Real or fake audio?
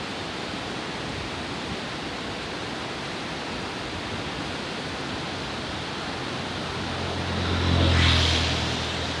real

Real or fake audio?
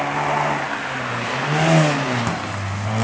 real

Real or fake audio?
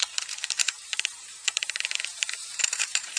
fake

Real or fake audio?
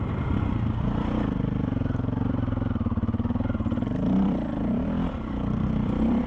fake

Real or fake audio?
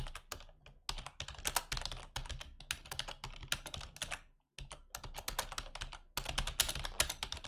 real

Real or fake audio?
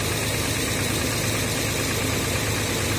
real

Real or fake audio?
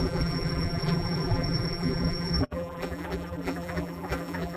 fake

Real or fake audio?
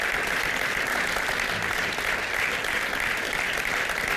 fake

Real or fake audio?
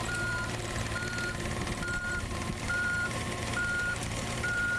fake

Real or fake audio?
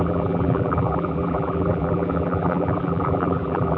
fake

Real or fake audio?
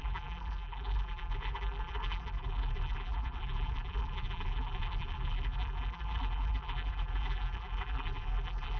fake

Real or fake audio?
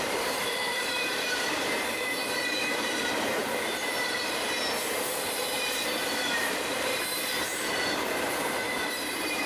fake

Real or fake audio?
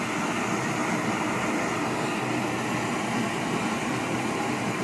real